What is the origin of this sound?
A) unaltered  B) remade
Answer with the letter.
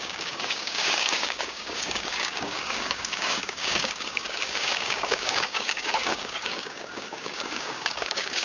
B